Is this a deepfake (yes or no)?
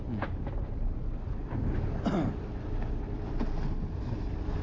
no